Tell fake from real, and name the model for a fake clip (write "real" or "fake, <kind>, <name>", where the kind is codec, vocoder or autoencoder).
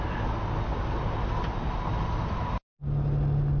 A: real